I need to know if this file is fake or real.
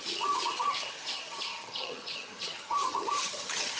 fake